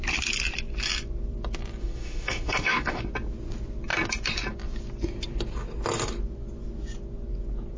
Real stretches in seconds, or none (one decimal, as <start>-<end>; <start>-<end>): 0.0-1.8; 3.0-7.8